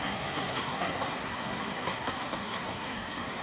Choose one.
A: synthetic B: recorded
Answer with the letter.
A